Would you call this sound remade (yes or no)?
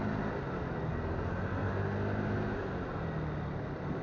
no